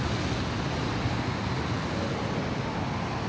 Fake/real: real